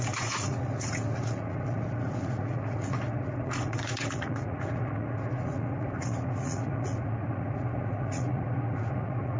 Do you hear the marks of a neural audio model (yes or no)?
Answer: yes